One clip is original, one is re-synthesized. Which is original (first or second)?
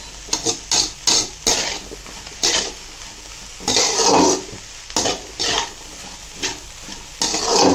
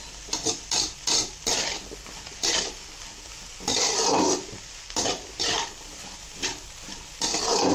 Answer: first